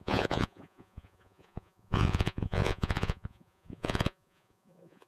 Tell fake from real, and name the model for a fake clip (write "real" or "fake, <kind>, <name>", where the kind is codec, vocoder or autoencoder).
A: fake, vocoder, Vocos